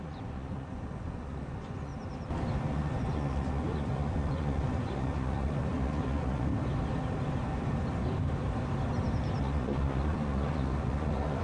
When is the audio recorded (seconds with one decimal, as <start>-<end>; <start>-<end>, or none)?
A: 1.9-2.7; 6.5-9.4